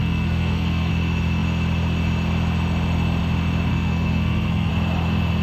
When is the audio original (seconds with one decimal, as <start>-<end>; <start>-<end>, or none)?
0.9-3.7; 4.7-5.4

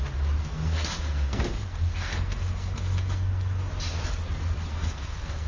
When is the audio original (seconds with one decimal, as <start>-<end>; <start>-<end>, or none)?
0.0-0.4; 3.7-4.7